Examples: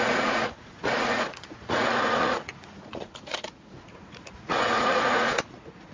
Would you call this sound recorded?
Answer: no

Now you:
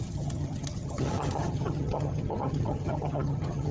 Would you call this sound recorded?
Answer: no